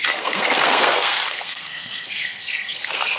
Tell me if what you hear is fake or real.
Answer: fake